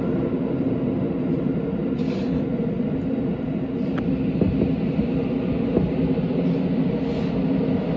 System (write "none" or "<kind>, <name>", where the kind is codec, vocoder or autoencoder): none